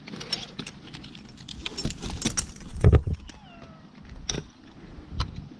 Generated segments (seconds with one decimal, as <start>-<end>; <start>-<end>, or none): 2.7-3.2